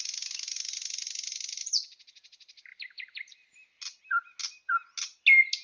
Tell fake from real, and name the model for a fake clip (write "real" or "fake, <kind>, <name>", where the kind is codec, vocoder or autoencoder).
real